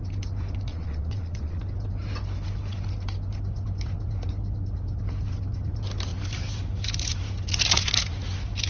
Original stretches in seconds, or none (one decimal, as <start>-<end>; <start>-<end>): 0.0-0.7; 1.6-8.7